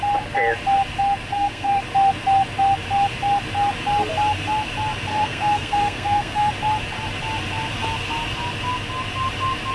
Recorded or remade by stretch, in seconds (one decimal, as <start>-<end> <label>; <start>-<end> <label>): 0.0-1.3 recorded; 1.3-1.8 remade; 1.8-5.1 recorded; 5.1-6.5 remade; 6.5-9.7 recorded

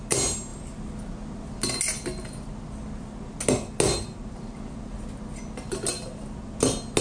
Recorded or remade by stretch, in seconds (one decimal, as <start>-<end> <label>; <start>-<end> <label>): 0.0-7.0 recorded

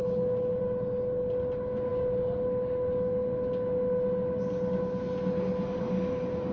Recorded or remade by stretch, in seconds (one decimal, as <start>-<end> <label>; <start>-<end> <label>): 0.0-6.5 recorded

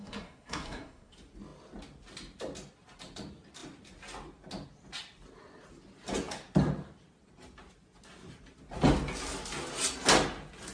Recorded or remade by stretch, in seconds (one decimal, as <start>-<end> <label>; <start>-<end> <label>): 0.0-1.1 remade; 1.1-10.7 recorded

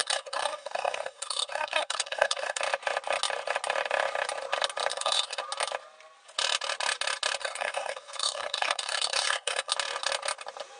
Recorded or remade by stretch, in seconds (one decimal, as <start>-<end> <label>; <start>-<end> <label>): 0.0-2.6 remade; 2.6-4.9 recorded; 4.9-5.4 remade; 5.4-7.4 recorded; 7.4-9.7 remade; 9.7-10.8 recorded